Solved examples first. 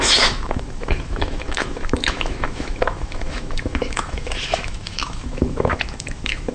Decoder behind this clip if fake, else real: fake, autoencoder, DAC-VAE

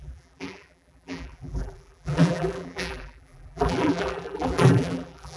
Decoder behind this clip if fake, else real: fake, vocoder, BigVGAN v2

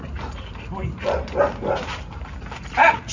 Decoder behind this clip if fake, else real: real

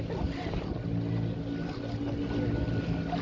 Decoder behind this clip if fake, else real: real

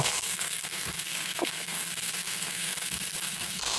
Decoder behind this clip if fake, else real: fake, codec, SNAC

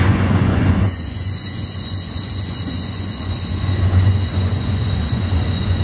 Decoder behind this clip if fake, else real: fake, vocoder, Vocos